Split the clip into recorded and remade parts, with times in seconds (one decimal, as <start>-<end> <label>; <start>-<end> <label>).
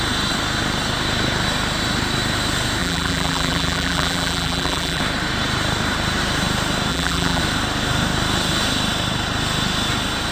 0.0-2.8 recorded; 2.8-5.0 remade; 5.0-6.9 recorded; 6.9-7.4 remade; 7.4-10.3 recorded